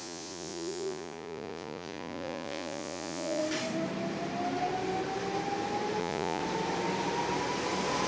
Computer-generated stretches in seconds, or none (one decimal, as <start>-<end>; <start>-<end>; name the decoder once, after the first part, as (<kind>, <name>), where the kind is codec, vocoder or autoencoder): 0.0-3.4 (vocoder, Vocos); 6.0-6.4

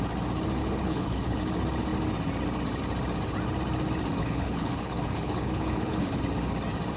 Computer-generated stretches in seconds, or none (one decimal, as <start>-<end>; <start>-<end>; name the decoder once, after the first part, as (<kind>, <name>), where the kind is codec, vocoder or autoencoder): 0.6-1.4 (codec, HILCodec); 4.2-6.2

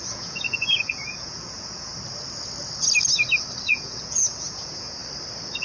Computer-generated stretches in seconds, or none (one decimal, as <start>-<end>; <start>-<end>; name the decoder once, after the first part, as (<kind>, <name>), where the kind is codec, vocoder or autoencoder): 0.0-1.9 (vocoder, Vocos); 3.7-5.0

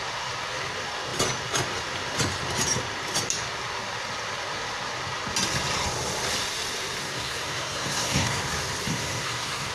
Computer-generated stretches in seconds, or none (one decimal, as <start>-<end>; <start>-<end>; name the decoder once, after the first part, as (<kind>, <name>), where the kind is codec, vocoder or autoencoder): 7.0-8.4 (codec, SNAC); 8.9-9.7

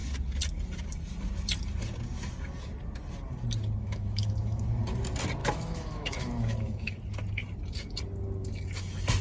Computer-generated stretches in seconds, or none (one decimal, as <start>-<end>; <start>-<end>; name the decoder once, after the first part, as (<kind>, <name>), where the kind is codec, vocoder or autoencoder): 3.8-4.6 (autoencoder, DAC-VAE); 5.4-7.0

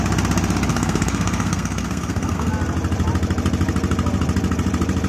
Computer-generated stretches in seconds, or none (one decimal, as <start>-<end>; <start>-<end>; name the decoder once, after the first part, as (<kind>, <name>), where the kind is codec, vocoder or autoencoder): 0.7-2.5 (codec, SNAC)

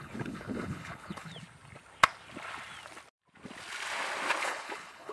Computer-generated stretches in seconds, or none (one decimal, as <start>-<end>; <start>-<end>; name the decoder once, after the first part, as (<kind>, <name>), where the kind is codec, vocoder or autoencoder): 0.0-1.3 (codec, HILCodec); 4.4-5.1